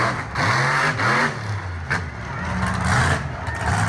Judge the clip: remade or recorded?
recorded